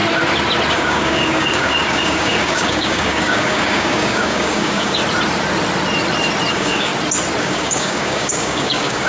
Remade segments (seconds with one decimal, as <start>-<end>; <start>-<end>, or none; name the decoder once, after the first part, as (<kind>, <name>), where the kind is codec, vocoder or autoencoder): 0.7-5.0 (codec, DAC); 6.5-6.9; 7.4-9.1